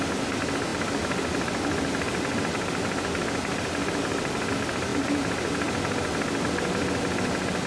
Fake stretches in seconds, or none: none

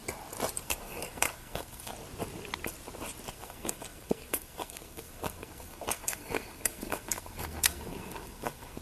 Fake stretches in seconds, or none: 0.6-1.9; 3.3-8.8

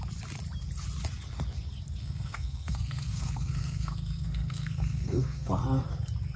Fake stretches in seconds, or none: 2.0-5.6

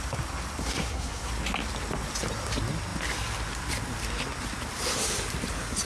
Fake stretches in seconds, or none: 0.6-1.3

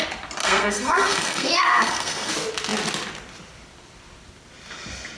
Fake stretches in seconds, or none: 0.4-2.3

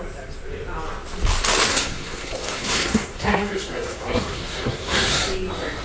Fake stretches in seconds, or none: 1.7-5.2